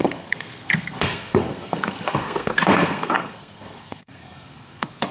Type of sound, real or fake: fake